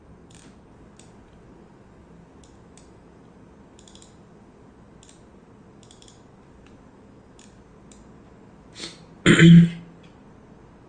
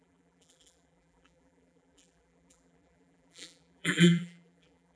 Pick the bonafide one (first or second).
first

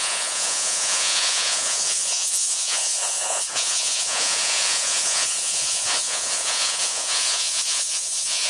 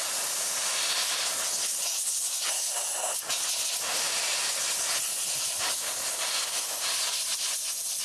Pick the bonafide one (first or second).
second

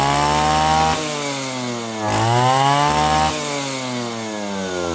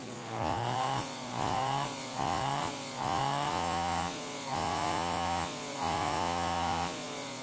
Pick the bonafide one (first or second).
first